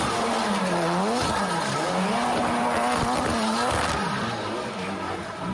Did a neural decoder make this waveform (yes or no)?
no